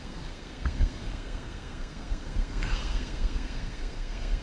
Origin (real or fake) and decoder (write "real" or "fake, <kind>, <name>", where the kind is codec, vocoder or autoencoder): fake, codec, SNAC